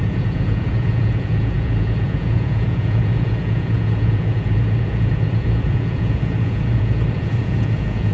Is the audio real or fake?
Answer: fake